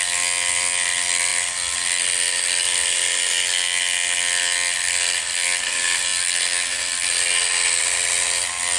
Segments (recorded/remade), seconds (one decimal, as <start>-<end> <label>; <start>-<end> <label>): 0.0-8.8 recorded